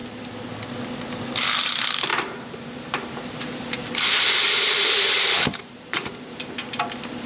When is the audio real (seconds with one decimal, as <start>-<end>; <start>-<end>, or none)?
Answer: 0.0-2.1; 6.5-7.3